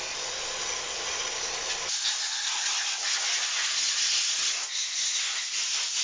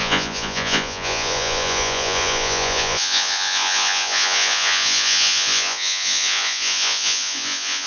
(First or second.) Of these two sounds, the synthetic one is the second